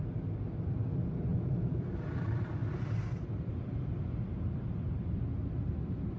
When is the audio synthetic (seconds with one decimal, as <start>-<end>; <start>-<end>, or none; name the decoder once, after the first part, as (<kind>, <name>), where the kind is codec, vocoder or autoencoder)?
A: 1.3-1.9 (vocoder, Vocos)